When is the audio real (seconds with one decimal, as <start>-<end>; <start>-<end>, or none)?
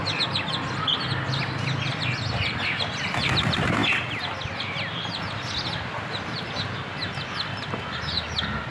0.0-8.7